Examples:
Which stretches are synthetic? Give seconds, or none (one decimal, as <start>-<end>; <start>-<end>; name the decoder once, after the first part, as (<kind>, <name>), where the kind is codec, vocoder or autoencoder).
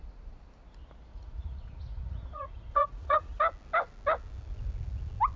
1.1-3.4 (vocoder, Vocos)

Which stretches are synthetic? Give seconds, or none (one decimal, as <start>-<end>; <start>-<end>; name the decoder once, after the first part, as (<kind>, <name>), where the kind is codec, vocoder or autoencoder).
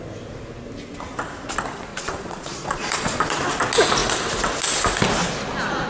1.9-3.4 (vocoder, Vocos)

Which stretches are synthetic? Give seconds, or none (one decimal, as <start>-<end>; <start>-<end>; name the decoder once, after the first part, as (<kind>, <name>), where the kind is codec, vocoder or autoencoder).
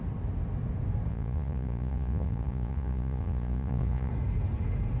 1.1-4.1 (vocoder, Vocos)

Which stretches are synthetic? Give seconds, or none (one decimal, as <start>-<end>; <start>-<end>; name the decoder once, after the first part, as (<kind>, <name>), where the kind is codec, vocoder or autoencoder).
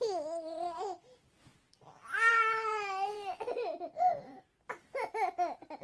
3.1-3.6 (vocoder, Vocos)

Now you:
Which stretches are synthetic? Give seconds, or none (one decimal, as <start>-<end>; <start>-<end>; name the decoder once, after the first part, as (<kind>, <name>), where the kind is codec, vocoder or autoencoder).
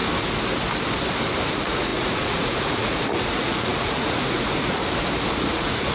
1.5-4.8 (vocoder, Vocos); 5.5-5.9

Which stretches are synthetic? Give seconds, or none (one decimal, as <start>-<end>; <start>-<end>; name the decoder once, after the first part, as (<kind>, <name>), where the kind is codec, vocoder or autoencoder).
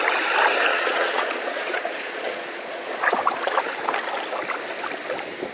0.7-3.6 (vocoder, Vocos)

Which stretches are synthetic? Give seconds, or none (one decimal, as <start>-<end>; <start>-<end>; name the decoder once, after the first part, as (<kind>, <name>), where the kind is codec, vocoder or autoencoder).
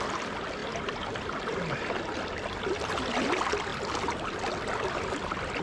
none